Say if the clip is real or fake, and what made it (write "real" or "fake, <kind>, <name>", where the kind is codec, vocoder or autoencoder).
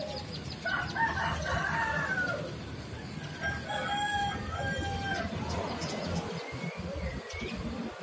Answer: real